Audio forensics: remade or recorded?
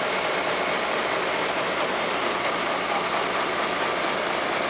recorded